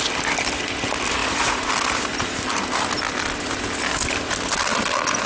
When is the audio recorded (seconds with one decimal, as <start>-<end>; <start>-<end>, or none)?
0.0-1.2; 1.7-5.3